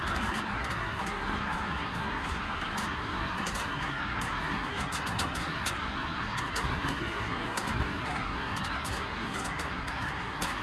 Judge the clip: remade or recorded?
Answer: remade